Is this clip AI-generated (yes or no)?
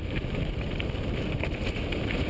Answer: no